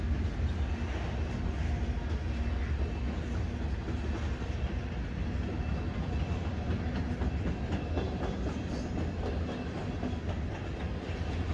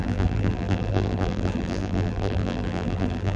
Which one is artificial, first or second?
second